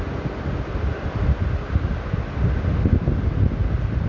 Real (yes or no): yes